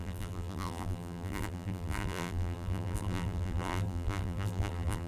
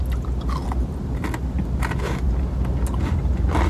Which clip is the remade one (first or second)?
first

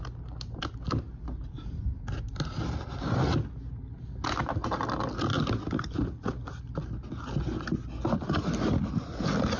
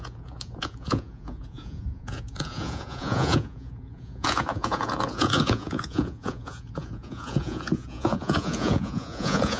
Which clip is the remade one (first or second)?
second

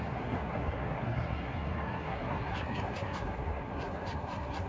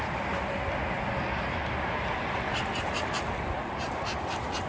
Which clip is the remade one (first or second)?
first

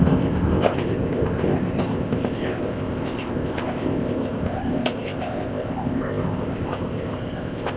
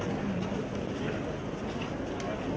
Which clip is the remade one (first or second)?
first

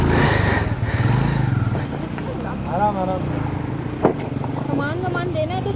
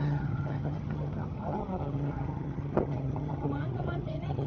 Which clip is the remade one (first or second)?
second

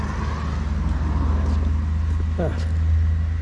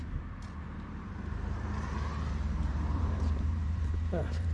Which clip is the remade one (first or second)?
second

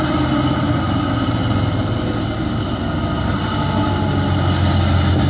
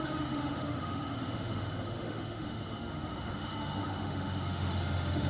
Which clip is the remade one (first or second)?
second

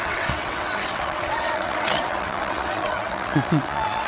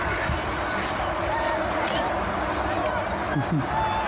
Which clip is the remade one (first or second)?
first